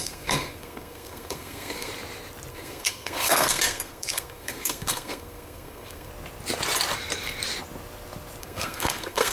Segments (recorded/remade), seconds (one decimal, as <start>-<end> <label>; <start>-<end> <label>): 0.0-1.9 remade; 1.9-2.5 recorded; 2.5-6.1 remade; 6.1-8.4 recorded; 8.4-9.3 remade